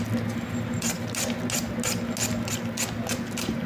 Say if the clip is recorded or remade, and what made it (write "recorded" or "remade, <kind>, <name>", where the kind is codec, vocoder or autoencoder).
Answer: recorded